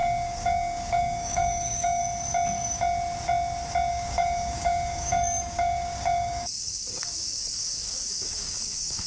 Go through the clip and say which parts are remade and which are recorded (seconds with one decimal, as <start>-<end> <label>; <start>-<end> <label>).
0.0-2.0 remade; 2.0-3.9 recorded; 3.9-9.1 remade